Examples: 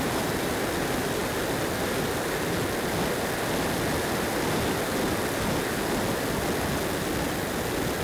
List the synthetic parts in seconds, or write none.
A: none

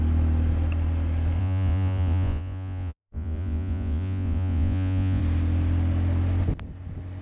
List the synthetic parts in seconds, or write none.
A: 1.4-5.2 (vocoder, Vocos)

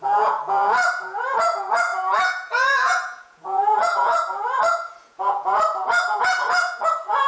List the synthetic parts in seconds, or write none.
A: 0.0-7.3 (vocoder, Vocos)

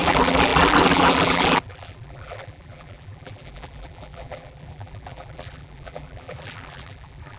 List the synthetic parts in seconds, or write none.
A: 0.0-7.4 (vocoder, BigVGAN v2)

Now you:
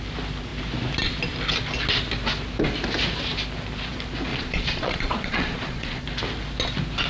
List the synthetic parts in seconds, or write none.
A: 4.3-6.0 (vocoder, Vocos)

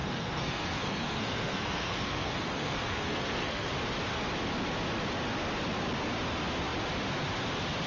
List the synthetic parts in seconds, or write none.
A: 0.0-3.7 (codec, SNAC)